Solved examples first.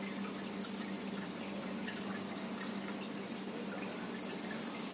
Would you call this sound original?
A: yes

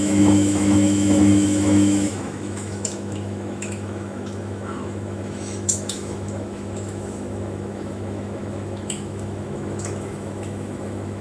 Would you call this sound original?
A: no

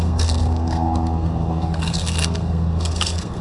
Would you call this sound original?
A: no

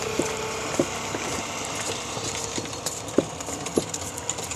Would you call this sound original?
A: yes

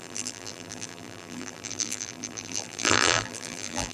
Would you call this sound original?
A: no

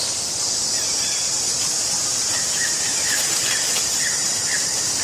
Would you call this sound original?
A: no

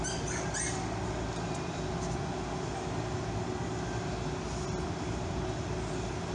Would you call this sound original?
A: yes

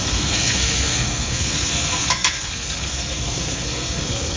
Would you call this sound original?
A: no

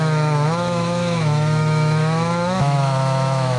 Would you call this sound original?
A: no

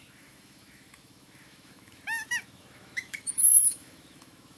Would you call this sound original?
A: no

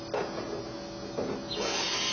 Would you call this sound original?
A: yes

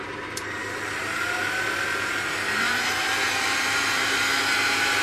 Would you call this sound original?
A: no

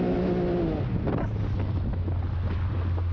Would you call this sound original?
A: yes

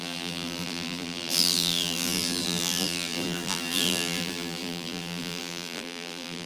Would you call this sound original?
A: no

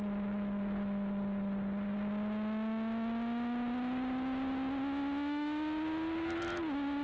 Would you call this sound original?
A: yes